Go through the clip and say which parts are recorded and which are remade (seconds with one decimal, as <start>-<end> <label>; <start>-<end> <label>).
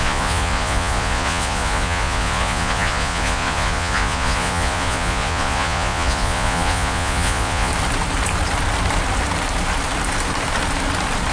0.0-7.7 remade; 7.7-11.3 recorded